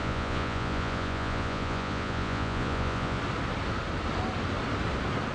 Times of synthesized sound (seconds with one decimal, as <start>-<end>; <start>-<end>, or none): 0.0-3.2